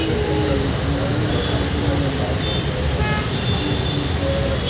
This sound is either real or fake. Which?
real